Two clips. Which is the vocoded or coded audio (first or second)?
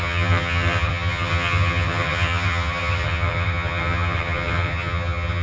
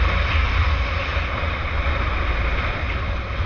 first